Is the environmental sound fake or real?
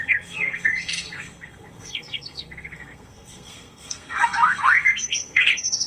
fake